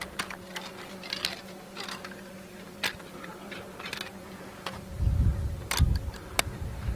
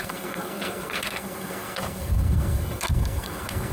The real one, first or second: first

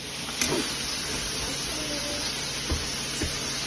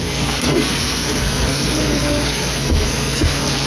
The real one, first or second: first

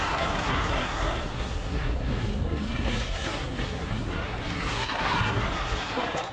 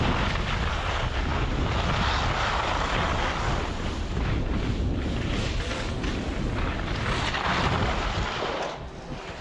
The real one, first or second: second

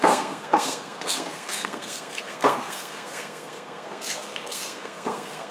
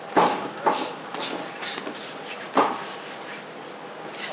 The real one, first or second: second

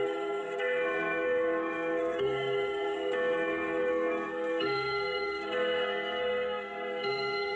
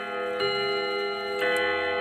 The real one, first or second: second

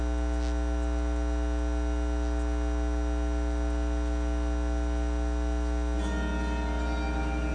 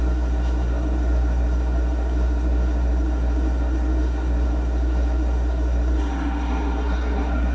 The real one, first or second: first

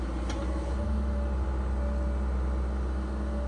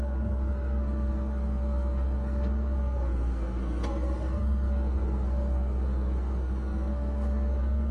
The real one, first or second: first